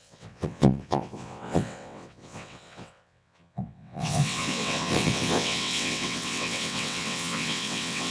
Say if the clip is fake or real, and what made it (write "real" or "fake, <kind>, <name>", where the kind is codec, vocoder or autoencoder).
fake, vocoder, WaveNeXt